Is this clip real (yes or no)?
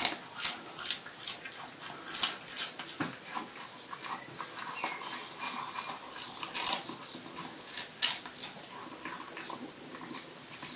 yes